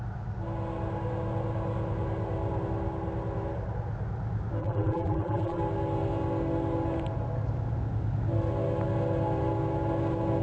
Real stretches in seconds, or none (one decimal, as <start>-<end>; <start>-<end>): 0.0-4.6; 5.6-10.4